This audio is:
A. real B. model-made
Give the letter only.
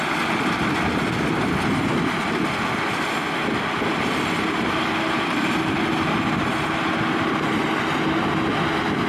A